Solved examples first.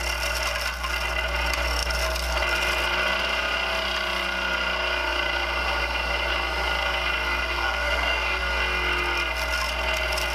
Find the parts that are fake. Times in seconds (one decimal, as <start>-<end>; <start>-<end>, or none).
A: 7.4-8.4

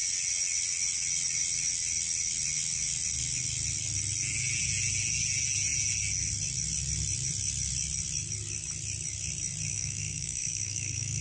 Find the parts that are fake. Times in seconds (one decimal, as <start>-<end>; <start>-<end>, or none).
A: 9.7-11.2

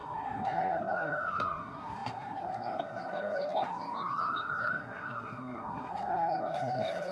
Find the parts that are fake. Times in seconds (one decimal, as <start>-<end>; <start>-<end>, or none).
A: 0.0-7.1

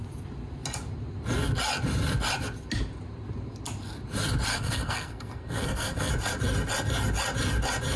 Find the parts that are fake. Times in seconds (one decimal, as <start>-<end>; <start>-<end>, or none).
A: 4.5-6.1

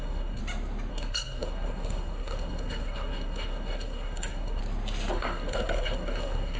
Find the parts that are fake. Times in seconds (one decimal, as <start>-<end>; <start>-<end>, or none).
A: 0.0-0.4; 0.9-4.6; 5.1-6.6

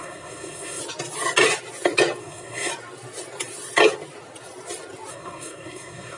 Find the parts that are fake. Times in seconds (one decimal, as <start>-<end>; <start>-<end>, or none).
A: 0.0-0.8; 2.2-2.7; 5.1-6.2

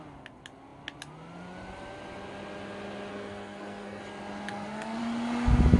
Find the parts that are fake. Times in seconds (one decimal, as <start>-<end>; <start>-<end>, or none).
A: 3.1-4.0; 4.5-5.0